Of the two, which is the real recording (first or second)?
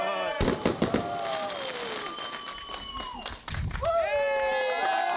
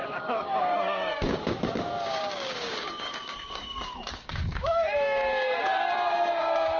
first